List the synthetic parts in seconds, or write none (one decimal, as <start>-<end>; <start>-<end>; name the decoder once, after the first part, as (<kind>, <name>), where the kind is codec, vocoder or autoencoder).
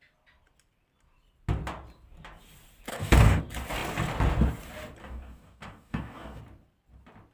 2.9-3.4 (codec, DAC); 5.0-6.4